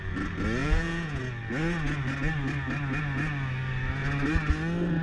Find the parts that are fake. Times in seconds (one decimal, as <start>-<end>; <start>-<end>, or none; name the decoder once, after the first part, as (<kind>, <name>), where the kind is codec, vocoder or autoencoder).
0.6-1.2 (vocoder, Vocos)